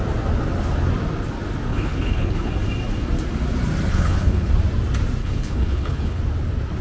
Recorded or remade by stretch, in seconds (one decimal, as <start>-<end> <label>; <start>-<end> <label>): 0.0-1.7 recorded; 1.7-2.5 remade; 2.5-3.9 recorded; 3.9-4.5 remade; 4.5-5.2 recorded; 5.2-6.2 remade; 6.2-6.8 recorded